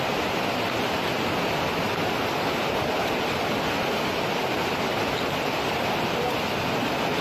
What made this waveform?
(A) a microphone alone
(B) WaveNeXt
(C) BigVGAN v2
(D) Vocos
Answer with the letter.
A